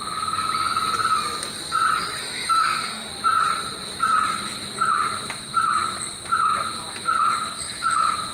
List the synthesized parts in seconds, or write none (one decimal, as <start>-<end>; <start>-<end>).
2.2-3.1